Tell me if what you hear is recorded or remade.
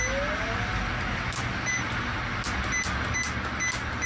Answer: recorded